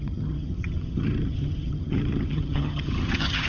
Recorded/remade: remade